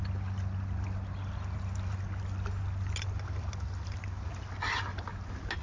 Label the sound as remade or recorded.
recorded